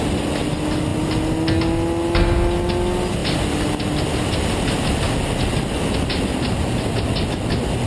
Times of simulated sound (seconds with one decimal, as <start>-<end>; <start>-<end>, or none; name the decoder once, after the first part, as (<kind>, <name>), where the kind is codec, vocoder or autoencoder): none